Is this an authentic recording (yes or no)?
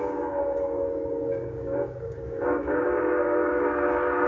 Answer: no